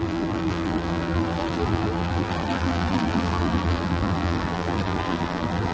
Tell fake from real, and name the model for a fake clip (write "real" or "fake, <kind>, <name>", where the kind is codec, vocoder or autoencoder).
fake, vocoder, BigVGAN v2